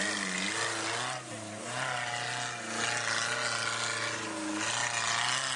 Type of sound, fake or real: real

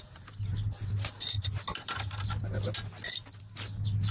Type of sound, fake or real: real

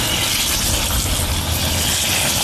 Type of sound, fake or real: real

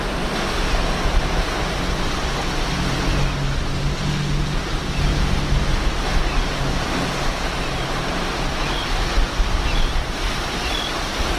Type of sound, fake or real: real